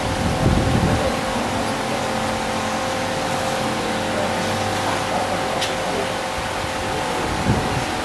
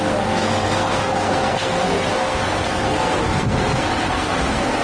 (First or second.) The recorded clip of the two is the first